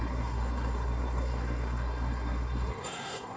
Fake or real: fake